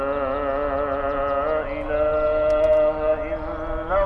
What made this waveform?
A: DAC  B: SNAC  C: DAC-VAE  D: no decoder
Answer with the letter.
D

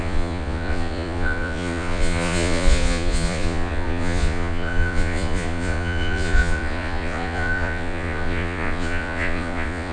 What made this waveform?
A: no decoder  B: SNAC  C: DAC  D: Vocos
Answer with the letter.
D